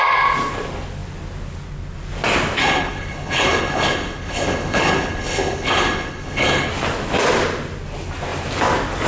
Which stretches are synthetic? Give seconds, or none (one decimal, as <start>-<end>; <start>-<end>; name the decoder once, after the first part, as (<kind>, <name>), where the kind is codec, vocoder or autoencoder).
2.6-6.7 (codec, HILCodec)